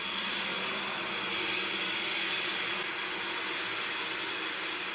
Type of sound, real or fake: real